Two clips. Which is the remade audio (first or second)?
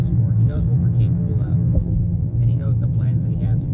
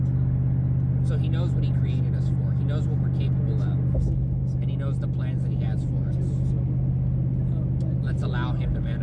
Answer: first